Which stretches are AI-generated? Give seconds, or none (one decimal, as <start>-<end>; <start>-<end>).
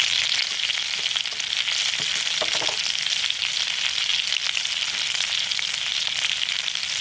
none